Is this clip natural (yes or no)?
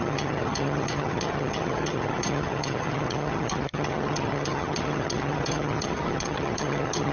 no